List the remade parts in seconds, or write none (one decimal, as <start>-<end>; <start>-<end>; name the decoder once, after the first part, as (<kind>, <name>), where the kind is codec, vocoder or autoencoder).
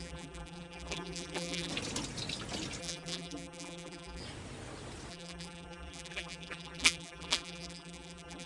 0.0-1.7 (vocoder, BigVGAN v2); 2.8-4.2; 5.1-8.5